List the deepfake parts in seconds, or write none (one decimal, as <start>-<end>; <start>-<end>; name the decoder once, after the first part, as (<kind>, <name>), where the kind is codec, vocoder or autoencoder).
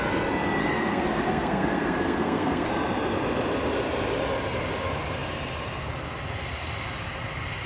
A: 0.6-2.7 (codec, SNAC)